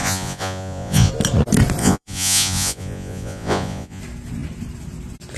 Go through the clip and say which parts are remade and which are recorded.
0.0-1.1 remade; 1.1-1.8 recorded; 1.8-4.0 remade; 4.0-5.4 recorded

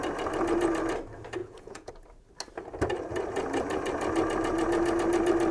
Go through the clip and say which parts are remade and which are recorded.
0.0-1.4 recorded; 1.4-1.9 remade; 1.9-5.5 recorded

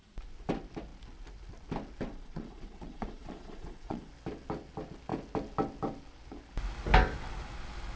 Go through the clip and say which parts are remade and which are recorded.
0.0-2.1 recorded; 2.1-4.1 remade; 4.1-8.0 recorded

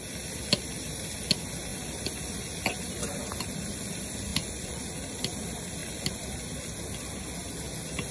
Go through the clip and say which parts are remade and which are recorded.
0.0-4.3 recorded; 4.3-4.8 remade; 4.8-8.1 recorded

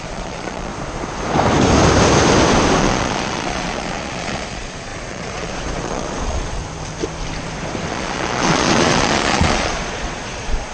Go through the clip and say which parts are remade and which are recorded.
0.0-0.7 remade; 0.7-2.8 recorded; 2.8-6.6 remade; 6.6-7.9 recorded; 7.9-10.7 remade

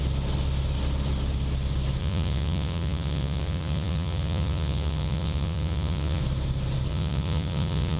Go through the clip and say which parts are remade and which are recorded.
0.0-2.0 recorded; 2.0-6.2 remade; 6.2-6.9 recorded; 6.9-8.0 remade

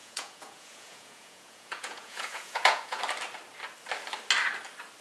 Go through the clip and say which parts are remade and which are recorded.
0.0-3.0 remade; 3.0-5.0 recorded

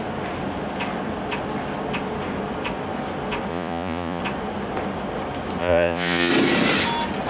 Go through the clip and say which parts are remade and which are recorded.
0.0-3.5 recorded; 3.5-4.2 remade; 4.2-5.6 recorded; 5.6-6.3 remade; 6.3-7.3 recorded